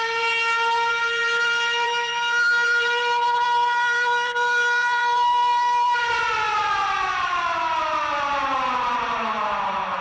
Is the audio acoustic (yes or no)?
no